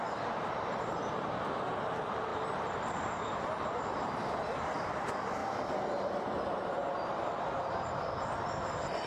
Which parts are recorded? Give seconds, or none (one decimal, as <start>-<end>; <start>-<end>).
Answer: none